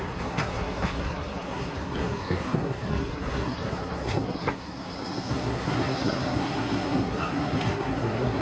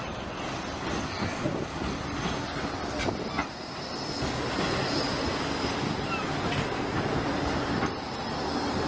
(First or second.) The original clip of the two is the second